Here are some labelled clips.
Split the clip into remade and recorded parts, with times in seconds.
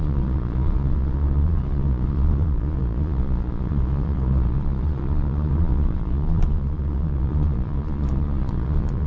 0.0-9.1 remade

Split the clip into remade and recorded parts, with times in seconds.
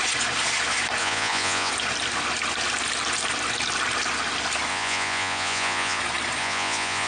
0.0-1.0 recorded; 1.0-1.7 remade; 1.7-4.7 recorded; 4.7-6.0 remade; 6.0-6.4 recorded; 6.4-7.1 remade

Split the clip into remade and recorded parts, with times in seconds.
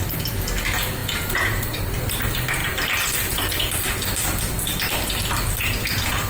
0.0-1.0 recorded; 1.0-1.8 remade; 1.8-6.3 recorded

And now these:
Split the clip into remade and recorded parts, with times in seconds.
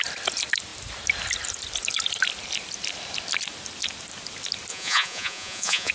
0.0-4.7 recorded; 4.7-5.9 remade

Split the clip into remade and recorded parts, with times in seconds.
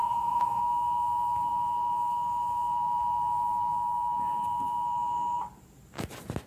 0.0-0.6 remade; 0.6-6.5 recorded